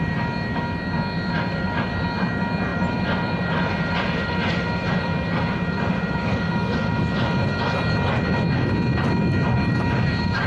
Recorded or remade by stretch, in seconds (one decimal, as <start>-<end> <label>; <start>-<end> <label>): 0.0-2.7 recorded; 2.7-7.5 remade; 7.5-10.5 recorded